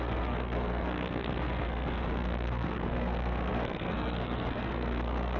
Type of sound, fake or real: fake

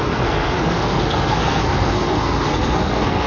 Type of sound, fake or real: fake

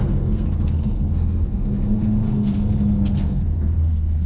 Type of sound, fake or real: fake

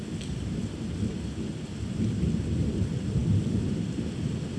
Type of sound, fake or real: real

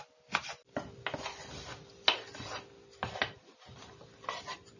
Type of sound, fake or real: real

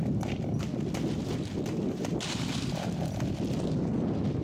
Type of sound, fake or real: real